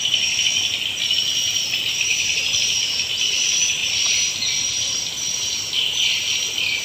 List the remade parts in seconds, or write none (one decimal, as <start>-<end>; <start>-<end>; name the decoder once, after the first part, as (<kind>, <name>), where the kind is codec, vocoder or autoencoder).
2.1-2.6 (vocoder, BigVGAN v2); 3.8-5.1